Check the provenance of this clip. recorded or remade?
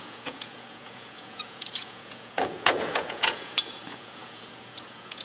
remade